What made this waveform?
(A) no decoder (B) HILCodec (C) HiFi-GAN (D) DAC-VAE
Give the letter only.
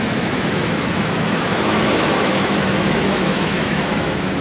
D